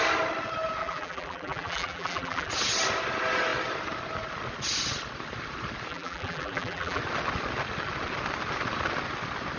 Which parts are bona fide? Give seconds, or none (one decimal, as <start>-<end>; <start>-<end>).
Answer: 0.0-0.8; 2.5-5.9; 7.0-9.6